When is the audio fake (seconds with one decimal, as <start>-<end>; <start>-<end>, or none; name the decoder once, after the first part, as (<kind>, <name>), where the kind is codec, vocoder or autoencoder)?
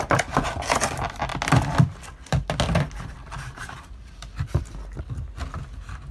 none